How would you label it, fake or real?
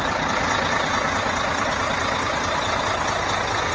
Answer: real